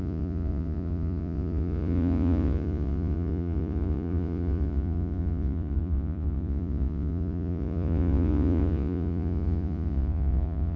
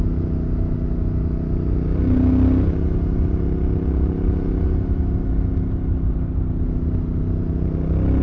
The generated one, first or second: first